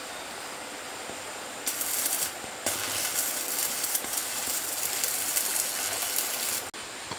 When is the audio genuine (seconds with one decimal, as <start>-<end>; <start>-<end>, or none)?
0.0-3.6; 5.0-7.2